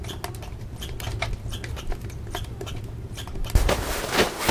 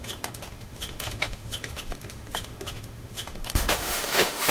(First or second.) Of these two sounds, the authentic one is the first